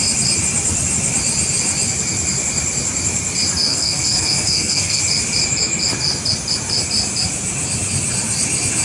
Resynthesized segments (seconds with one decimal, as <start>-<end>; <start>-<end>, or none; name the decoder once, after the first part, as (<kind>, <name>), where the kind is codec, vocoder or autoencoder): 3.7-5.0 (codec, SNAC)